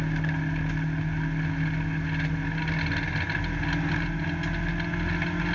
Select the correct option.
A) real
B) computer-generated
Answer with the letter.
A